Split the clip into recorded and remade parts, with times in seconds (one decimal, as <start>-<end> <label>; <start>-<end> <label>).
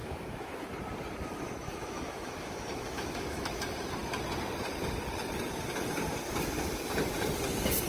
0.0-0.7 remade; 0.7-1.2 recorded; 1.2-3.6 remade; 3.6-7.9 recorded